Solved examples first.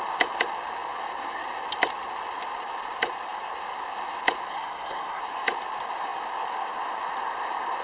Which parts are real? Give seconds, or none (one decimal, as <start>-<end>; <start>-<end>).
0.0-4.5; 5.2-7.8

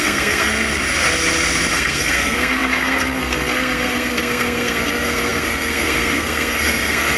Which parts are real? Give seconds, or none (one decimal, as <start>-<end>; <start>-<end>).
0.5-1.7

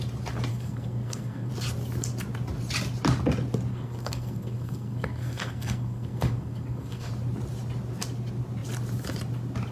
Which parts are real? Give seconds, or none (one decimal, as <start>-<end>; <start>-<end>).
0.0-0.5; 1.5-3.7; 7.1-9.7

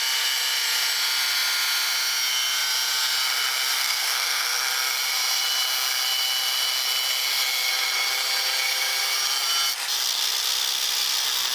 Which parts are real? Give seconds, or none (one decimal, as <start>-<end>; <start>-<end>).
0.0-3.8; 4.7-11.5

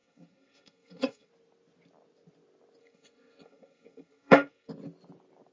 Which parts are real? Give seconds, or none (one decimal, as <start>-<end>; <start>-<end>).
1.3-2.8; 4.7-5.5

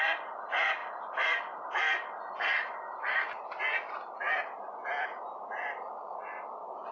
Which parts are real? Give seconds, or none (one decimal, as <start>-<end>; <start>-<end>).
0.0-6.9

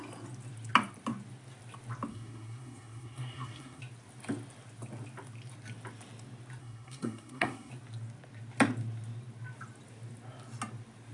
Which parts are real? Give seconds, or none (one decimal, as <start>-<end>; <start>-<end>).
0.0-2.1; 3.8-6.6; 7.7-11.1